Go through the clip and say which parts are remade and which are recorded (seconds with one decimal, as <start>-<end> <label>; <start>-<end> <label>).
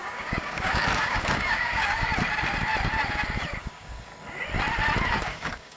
0.0-2.1 remade; 2.1-3.6 recorded; 3.6-4.1 remade; 4.1-5.1 recorded; 5.1-5.8 remade